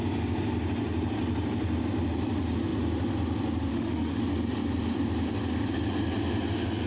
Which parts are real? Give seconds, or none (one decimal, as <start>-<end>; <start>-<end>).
0.0-3.7; 4.2-6.9